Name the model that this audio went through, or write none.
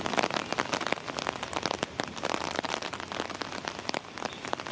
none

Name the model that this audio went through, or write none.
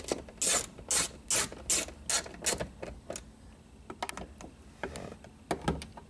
none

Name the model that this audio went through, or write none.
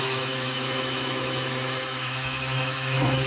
autoencoder, DAC-VAE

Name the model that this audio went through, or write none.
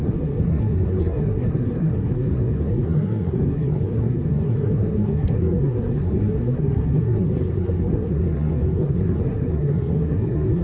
codec, SNAC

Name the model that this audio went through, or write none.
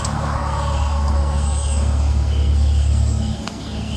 codec, SNAC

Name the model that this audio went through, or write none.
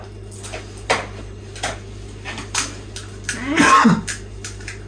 none